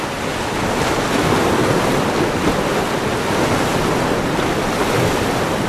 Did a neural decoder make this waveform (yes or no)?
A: no